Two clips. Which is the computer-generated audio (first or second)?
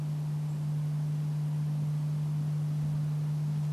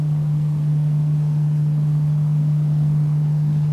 second